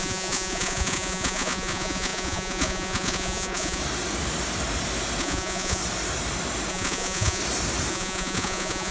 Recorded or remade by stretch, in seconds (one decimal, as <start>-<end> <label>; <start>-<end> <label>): 0.0-3.8 remade; 3.8-5.2 recorded; 5.2-5.8 remade; 5.8-6.7 recorded; 6.7-7.4 remade; 7.4-7.9 recorded; 7.9-8.9 remade